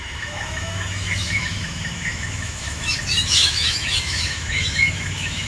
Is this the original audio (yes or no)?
no